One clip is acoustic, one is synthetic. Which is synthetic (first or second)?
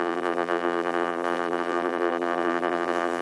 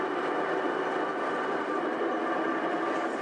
first